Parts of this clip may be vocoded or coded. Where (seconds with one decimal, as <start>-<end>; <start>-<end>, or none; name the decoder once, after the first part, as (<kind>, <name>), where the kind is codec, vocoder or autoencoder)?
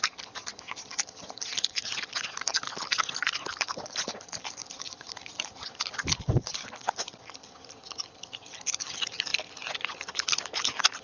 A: none